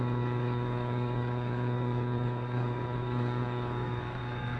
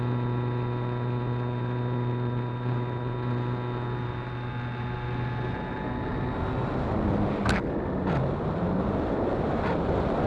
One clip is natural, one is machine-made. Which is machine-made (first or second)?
first